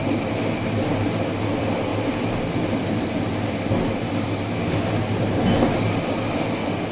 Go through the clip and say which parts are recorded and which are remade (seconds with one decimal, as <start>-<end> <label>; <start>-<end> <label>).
0.0-1.9 recorded; 1.9-3.3 remade; 3.3-6.9 recorded